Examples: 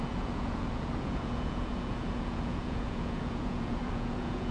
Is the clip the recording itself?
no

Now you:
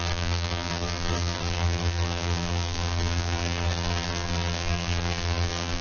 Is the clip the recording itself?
no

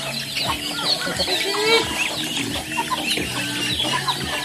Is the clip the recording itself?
yes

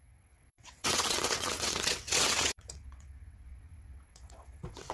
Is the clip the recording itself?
no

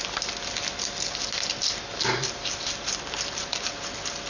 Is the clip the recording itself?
yes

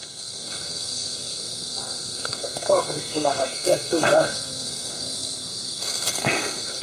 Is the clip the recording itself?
no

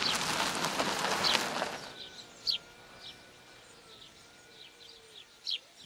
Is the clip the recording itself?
yes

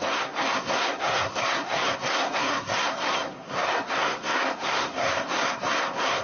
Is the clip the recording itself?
no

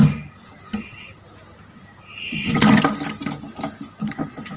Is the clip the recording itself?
yes